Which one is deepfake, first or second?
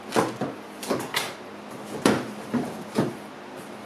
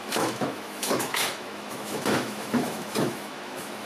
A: second